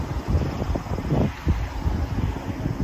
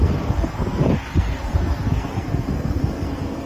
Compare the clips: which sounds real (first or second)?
first